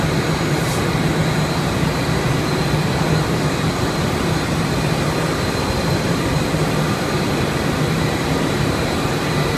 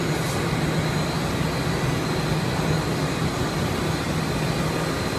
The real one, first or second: second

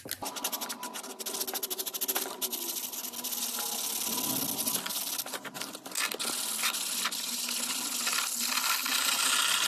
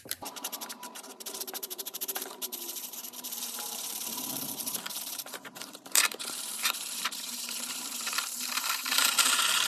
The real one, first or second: first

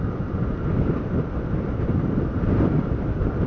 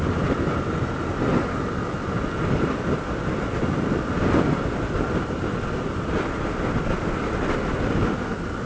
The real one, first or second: second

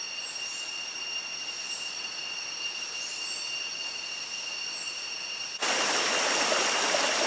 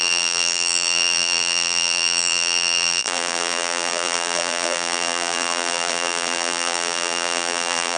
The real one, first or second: first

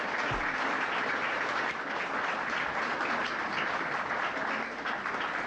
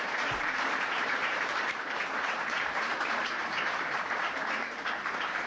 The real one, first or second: first